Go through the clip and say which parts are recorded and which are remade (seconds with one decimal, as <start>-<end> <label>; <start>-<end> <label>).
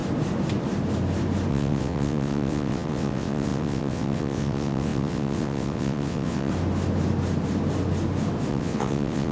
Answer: 0.0-1.5 recorded; 1.5-6.5 remade; 6.5-8.5 recorded; 8.5-9.3 remade